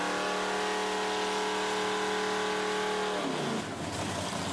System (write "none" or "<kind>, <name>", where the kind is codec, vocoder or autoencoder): none